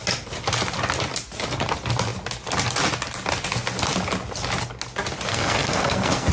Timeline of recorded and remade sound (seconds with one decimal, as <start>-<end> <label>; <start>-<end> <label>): 0.0-5.3 recorded; 5.3-6.3 remade